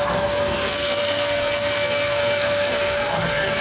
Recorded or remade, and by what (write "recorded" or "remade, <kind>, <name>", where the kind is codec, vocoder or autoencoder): remade, codec, SNAC